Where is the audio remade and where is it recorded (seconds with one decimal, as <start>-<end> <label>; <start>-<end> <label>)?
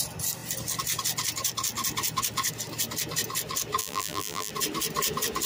0.0-3.8 recorded; 3.8-4.5 remade; 4.5-5.5 recorded